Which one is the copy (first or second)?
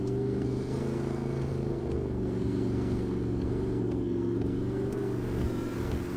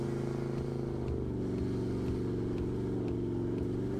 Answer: first